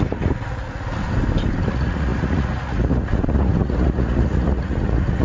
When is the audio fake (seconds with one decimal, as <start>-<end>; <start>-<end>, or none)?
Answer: 0.0-1.0; 1.7-5.2